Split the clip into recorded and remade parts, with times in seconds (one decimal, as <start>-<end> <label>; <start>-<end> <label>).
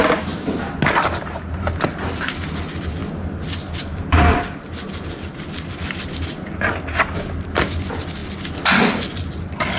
0.0-9.8 recorded